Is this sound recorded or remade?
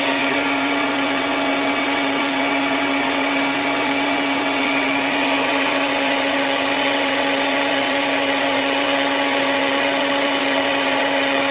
remade